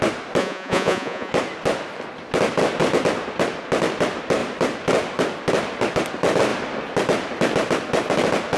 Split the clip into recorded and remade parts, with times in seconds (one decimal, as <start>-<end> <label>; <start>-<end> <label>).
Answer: 0.0-0.4 recorded; 0.4-1.3 remade; 1.3-8.6 recorded